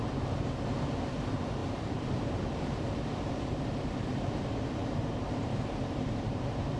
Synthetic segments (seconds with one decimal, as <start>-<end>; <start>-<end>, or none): 0.0-6.8